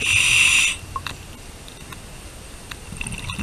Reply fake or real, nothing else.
real